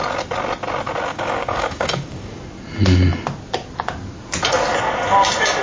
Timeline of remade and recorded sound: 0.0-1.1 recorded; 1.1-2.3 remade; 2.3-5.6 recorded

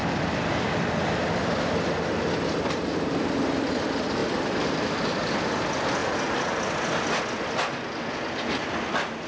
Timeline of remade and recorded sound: 0.0-9.3 recorded

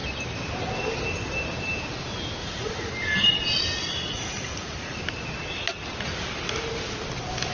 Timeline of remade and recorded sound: 0.0-2.4 recorded; 2.4-2.9 remade; 2.9-3.8 recorded; 3.8-5.0 remade; 5.0-7.5 recorded

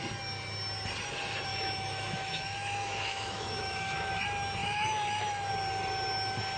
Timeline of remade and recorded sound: 0.0-1.5 recorded; 1.5-4.1 remade; 4.1-4.6 recorded; 4.6-5.5 remade; 5.5-6.6 recorded